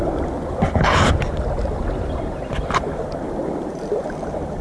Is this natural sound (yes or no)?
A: yes